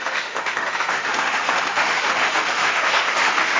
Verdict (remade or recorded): remade